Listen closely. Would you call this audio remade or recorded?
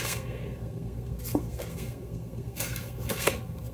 remade